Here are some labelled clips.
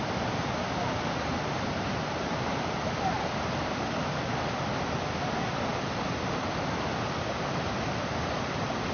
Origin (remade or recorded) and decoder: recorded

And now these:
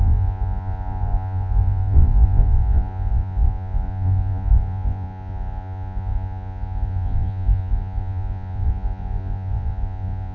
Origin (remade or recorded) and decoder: remade, vocoder, Vocos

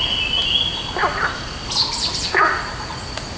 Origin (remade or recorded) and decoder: recorded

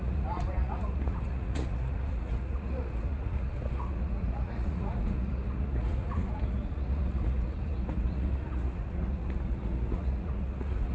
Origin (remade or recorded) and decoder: remade, vocoder, Vocos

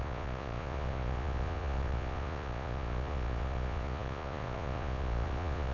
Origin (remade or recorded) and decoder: remade, vocoder, Vocos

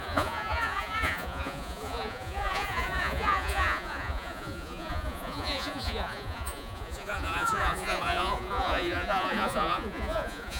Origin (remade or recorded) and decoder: remade, vocoder, Vocos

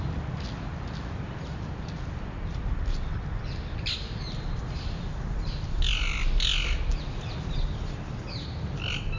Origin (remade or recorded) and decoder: recorded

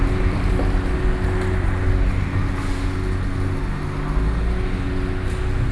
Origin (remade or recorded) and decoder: recorded